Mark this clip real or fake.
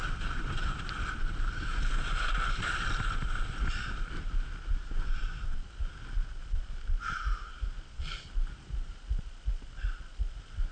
real